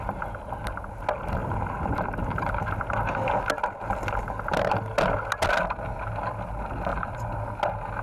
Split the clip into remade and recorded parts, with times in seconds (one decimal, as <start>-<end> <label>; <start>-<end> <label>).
0.0-8.0 recorded